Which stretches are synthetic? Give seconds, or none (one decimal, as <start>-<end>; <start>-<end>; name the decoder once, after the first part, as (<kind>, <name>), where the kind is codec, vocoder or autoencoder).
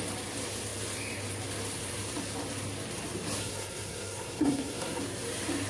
3.4-5.0 (codec, SNAC)